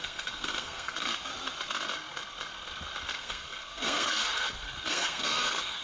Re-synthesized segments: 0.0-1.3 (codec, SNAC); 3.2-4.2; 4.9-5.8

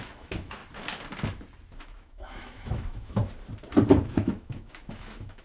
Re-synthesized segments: 0.0-0.6 (autoencoder, DAC-VAE); 1.8-3.2; 4.0-5.4

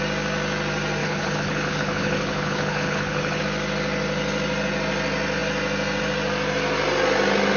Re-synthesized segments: 1.0-3.4 (codec, HILCodec)

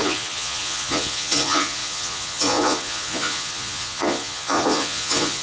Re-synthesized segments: 0.0-5.4 (vocoder, Vocos)

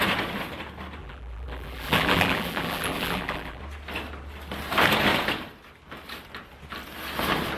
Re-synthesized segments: 1.0-3.6 (vocoder, BigVGAN v2)

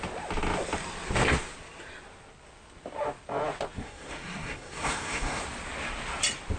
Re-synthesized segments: 3.8-5.4 (codec, SNAC)

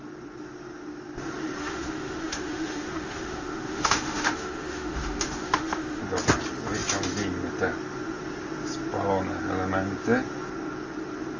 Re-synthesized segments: 1.6-6.0 (autoencoder, DAC-VAE)